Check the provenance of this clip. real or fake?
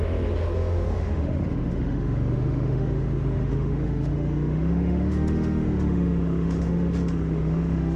fake